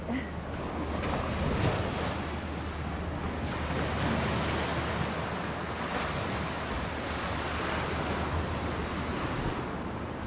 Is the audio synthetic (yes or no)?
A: no